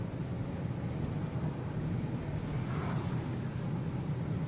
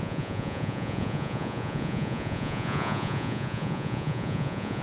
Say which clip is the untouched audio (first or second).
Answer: first